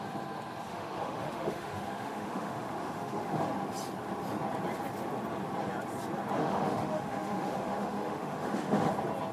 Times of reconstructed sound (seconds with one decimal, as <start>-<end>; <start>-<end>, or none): 0.7-3.4; 6.4-8.9